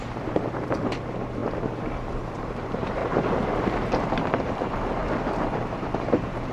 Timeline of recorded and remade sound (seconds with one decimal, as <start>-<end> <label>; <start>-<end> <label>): 0.0-1.4 remade; 1.4-2.1 recorded; 2.1-3.0 remade; 3.0-4.0 recorded; 4.0-5.0 remade; 5.0-5.5 recorded; 5.5-6.5 remade